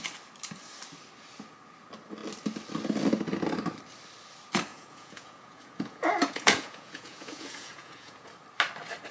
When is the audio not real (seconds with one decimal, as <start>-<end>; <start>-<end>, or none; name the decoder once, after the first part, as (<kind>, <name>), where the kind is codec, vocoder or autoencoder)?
4.7-8.3 (vocoder, Vocos)